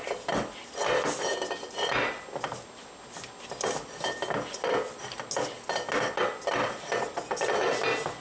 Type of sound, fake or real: real